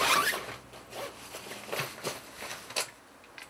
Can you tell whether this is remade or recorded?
recorded